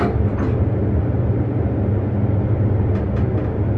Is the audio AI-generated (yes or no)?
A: no